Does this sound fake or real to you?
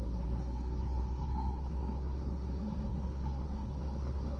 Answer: fake